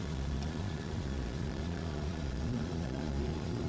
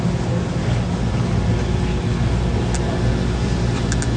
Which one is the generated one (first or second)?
first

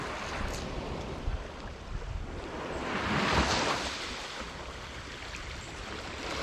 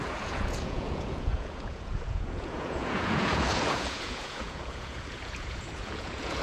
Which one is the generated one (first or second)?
second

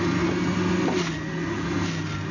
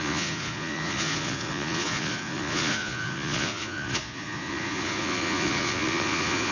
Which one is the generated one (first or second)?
second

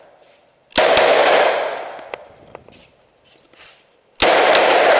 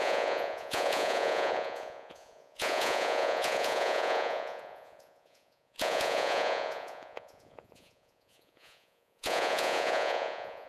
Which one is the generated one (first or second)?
second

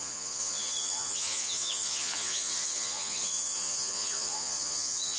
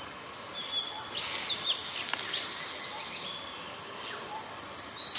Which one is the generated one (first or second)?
first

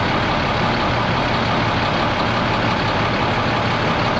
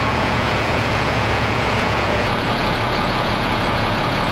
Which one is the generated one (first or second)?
second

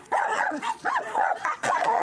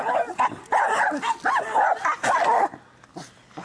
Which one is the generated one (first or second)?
first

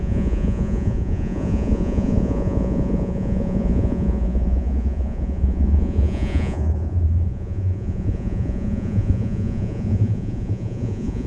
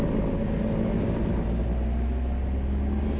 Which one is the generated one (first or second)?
first